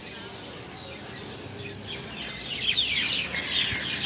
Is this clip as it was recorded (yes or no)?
yes